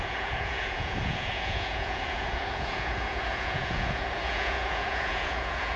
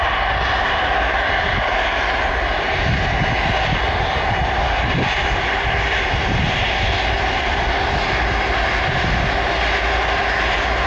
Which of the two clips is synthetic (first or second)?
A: first